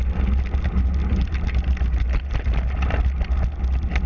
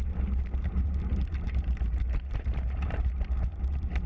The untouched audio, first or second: first